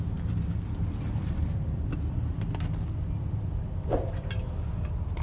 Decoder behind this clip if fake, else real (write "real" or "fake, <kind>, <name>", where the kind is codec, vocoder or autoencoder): real